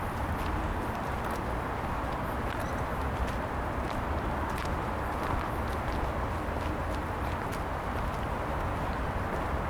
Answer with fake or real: real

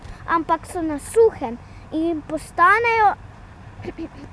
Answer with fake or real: real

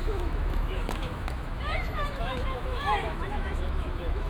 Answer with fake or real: fake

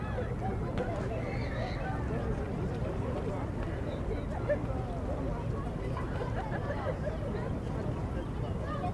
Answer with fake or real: real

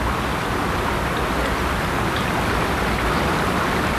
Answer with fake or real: real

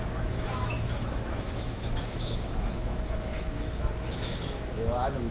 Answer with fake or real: fake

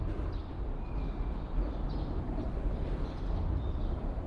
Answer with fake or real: real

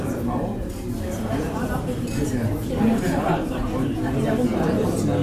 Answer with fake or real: real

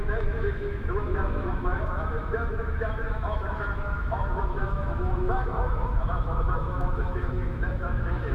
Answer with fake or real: fake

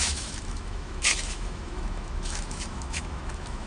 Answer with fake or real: fake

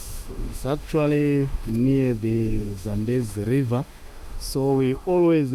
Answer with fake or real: fake